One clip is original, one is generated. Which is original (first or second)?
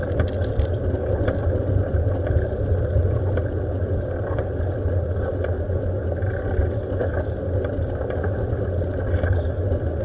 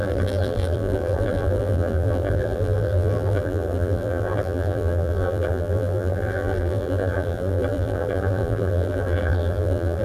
first